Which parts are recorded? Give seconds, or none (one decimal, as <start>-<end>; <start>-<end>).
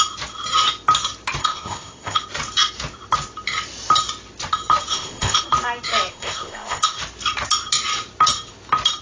0.0-1.4; 2.2-4.9; 5.4-6.1; 7.0-9.0